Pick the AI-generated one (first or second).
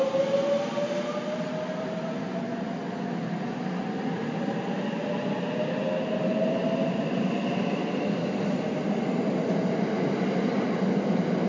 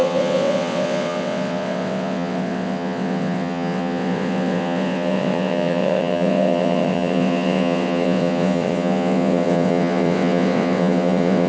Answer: second